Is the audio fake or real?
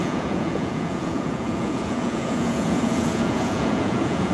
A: fake